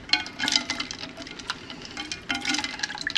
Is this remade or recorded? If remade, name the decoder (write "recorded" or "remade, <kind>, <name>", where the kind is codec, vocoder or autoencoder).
recorded